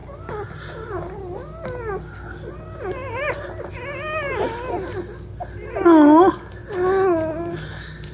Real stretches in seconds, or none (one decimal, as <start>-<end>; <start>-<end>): 0.0-8.1